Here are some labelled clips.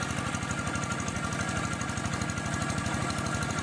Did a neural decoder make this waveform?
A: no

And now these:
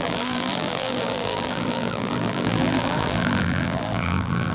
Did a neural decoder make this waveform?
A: yes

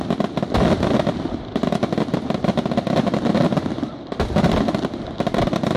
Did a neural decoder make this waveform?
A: no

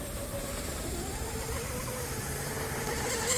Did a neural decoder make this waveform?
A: yes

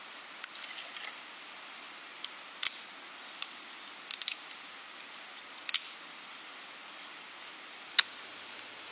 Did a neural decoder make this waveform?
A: no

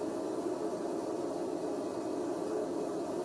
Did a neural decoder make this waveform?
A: no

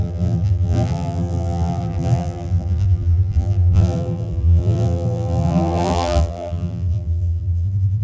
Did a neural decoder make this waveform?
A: yes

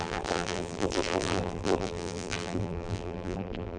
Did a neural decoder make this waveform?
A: yes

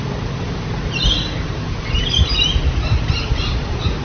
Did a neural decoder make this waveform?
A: no